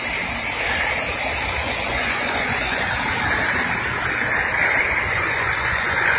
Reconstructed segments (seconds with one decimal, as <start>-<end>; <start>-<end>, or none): 1.6-2.9; 5.1-6.2